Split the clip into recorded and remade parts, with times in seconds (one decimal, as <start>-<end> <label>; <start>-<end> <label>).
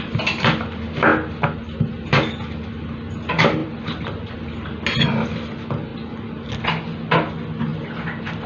0.0-1.1 recorded; 1.1-1.8 remade; 1.8-3.6 recorded; 3.6-4.3 remade; 4.3-8.5 recorded